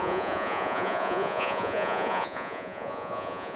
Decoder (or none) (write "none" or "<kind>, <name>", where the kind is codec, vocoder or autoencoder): vocoder, Vocos